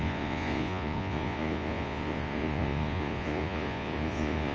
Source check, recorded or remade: remade